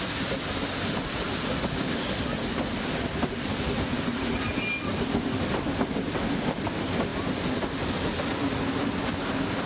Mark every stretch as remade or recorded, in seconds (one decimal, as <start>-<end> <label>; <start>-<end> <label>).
0.0-9.7 recorded